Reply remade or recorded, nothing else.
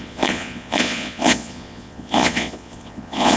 remade